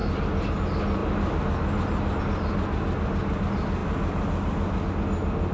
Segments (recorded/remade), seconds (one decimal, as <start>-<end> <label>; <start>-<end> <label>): 0.0-5.5 recorded